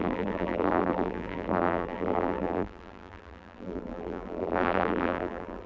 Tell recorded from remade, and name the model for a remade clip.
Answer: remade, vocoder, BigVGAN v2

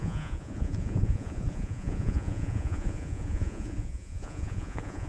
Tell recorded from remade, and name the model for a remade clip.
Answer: remade, vocoder, Vocos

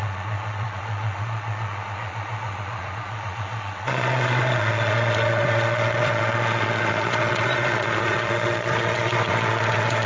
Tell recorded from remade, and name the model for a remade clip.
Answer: remade, vocoder, Vocos